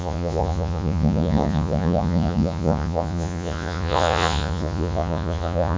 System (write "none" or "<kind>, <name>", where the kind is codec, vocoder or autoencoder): vocoder, Vocos